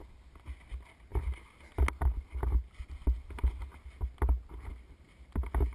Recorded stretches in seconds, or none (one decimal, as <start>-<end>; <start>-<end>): 0.0-5.7